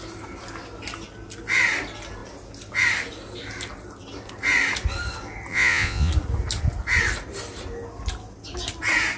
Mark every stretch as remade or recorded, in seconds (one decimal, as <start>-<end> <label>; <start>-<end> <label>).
0.0-5.5 recorded; 5.5-6.1 remade; 6.1-9.2 recorded